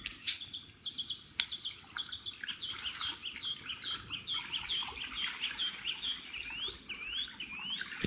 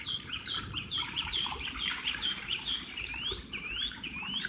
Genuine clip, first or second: first